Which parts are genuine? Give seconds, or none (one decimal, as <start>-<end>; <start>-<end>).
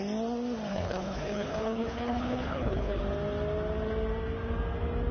0.0-0.7; 3.0-5.1